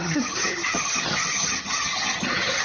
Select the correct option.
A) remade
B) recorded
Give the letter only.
A